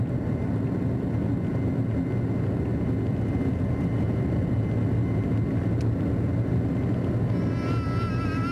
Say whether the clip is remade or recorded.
recorded